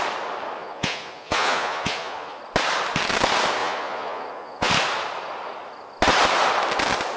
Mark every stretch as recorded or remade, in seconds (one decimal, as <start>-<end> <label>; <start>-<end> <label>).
0.0-0.6 recorded; 0.6-2.4 remade; 2.4-3.6 recorded; 3.6-4.7 remade; 4.7-7.2 recorded